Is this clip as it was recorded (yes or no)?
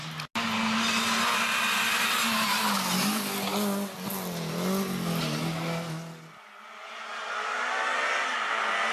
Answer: yes